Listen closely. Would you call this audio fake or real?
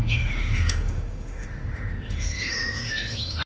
fake